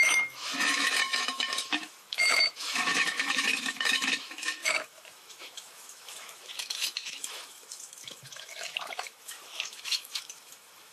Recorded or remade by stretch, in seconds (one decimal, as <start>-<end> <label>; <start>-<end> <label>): 0.0-10.9 remade